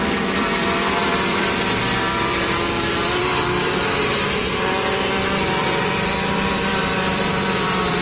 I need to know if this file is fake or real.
fake